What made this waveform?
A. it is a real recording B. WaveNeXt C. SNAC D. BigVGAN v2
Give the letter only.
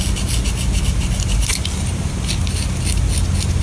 A